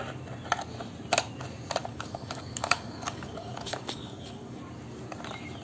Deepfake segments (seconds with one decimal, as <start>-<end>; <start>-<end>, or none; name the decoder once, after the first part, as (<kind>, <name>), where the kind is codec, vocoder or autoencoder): 1.8-4.6 (codec, DAC)